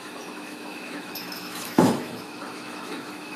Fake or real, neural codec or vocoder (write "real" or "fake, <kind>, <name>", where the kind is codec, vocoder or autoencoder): fake, autoencoder, DAC-VAE